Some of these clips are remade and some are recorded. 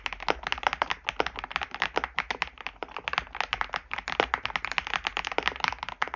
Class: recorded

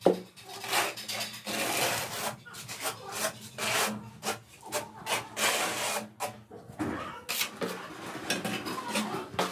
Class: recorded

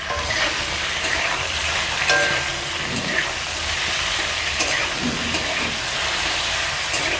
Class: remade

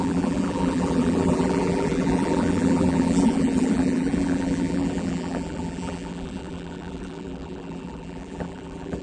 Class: remade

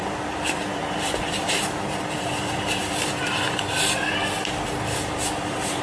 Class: remade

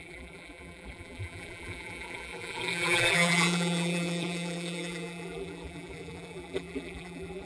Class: remade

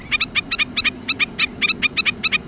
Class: recorded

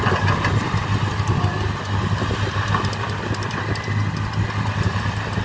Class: recorded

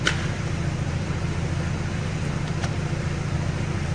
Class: remade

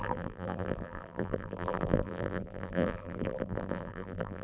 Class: remade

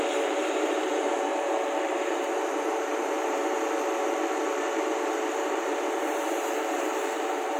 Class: remade